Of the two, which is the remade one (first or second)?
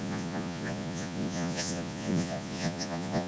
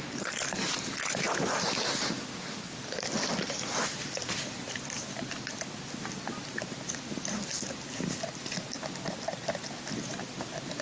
first